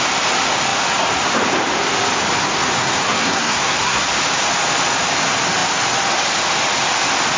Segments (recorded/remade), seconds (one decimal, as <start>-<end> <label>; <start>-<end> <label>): 0.0-2.8 recorded; 2.8-4.0 remade; 4.0-7.4 recorded